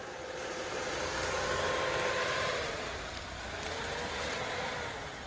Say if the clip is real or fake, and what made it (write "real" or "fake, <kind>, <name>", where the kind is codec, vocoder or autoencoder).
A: real